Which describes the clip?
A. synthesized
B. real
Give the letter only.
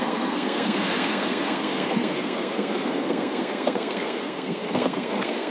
A